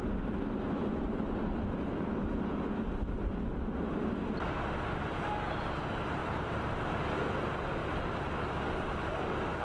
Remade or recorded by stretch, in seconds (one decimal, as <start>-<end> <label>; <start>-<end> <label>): 0.0-6.2 recorded; 6.2-6.9 remade; 6.9-7.8 recorded; 7.8-8.6 remade; 8.6-9.6 recorded